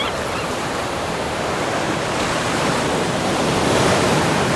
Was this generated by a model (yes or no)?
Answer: yes